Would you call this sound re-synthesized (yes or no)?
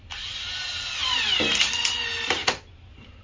no